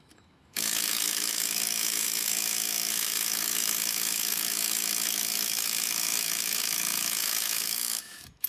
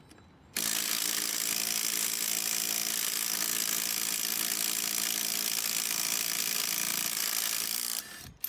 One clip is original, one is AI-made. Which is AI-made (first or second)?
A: first